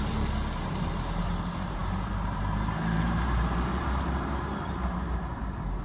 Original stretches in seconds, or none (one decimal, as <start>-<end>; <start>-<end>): 0.4-1.2